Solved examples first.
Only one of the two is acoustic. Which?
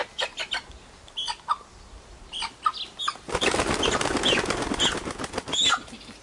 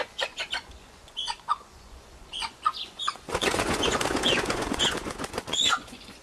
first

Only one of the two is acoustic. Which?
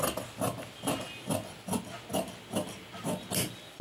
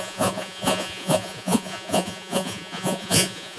first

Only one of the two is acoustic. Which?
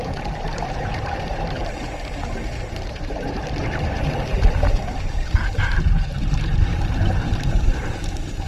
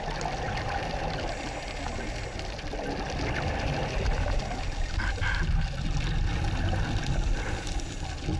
second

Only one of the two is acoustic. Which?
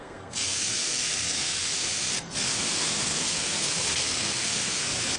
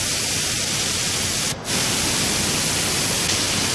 second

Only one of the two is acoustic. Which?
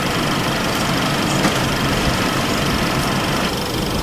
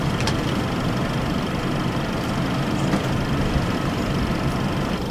second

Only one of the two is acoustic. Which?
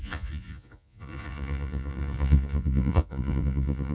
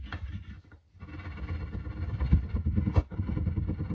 second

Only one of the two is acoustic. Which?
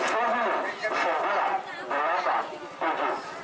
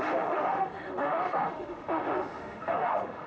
first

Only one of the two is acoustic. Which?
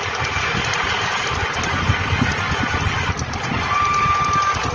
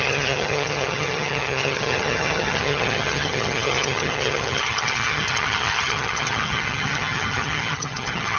first